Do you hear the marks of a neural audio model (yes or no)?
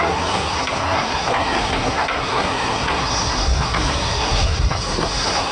yes